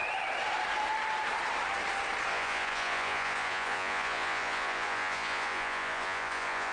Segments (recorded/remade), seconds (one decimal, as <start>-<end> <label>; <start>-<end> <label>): 0.0-2.3 recorded; 2.3-6.7 remade